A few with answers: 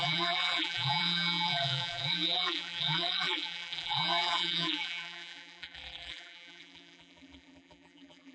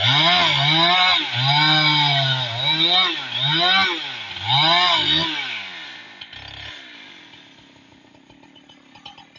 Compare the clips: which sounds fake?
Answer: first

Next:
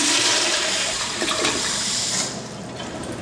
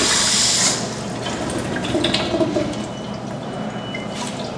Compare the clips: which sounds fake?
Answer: first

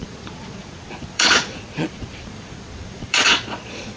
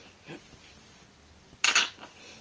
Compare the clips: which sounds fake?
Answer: first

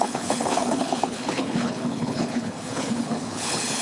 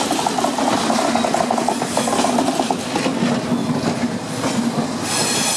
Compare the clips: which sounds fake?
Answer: first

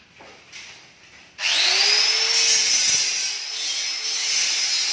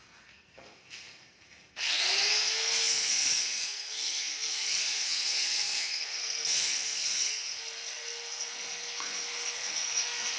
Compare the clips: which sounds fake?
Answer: second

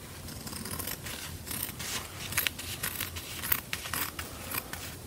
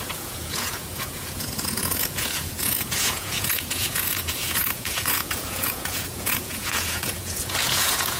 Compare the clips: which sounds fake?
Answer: second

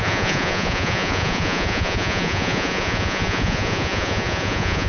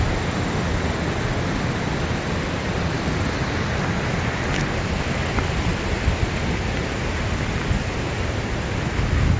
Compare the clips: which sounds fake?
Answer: first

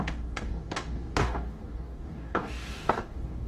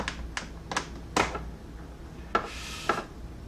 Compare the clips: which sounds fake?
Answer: first